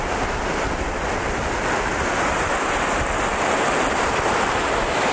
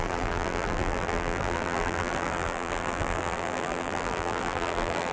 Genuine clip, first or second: first